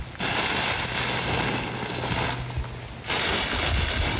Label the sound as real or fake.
real